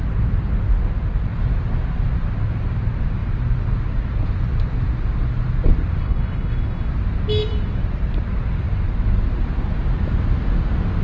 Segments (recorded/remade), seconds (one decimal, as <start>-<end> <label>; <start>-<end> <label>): 0.0-6.0 recorded; 6.0-6.9 remade; 6.9-11.0 recorded